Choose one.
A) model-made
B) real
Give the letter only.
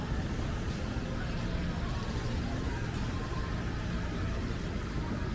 B